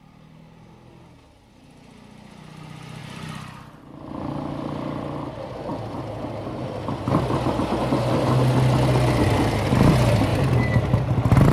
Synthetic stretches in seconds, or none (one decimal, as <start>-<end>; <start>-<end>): 3.0-3.8

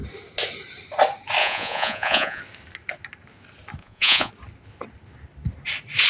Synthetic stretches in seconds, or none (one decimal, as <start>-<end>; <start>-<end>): 1.4-2.4; 3.8-4.3

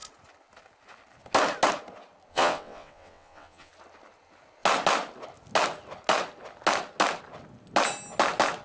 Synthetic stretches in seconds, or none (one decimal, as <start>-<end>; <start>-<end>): 2.3-3.7

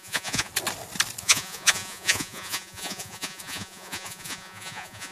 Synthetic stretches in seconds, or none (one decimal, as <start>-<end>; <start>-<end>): 0.0-0.5; 1.2-5.1

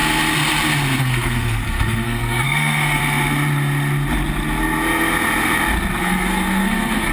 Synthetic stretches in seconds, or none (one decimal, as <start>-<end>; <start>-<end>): 1.0-3.0; 6.0-7.1

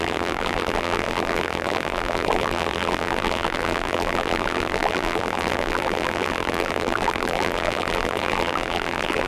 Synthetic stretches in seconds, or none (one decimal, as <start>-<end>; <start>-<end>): 0.0-9.3

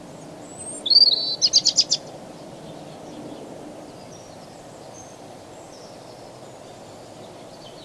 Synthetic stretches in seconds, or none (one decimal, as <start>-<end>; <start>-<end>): none

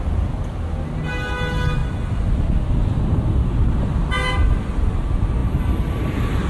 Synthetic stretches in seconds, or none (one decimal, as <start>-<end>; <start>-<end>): 5.4-6.5